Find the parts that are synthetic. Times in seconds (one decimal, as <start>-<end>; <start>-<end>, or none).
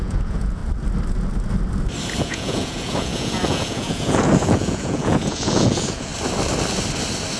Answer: 0.0-0.6; 2.2-6.1